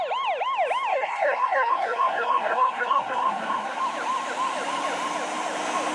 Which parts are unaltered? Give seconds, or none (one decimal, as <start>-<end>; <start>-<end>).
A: 0.0-0.9; 3.8-5.9